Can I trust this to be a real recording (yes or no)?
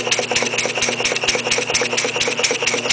yes